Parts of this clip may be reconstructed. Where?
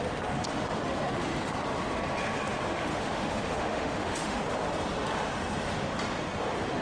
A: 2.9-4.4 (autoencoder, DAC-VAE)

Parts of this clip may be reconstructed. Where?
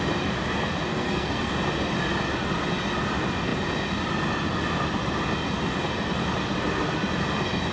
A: 0.9-1.5 (codec, SNAC)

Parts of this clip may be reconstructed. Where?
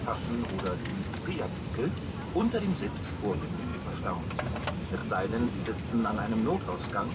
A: 0.9-2.6 (vocoder, BigVGAN v2); 5.0-6.2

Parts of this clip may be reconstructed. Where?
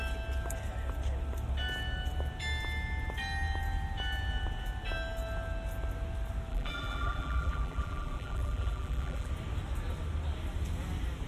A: 6.5-9.3 (vocoder, BigVGAN v2)